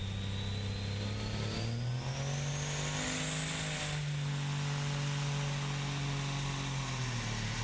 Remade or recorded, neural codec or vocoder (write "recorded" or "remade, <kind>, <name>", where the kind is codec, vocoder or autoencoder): recorded